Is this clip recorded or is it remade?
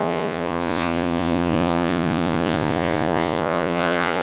remade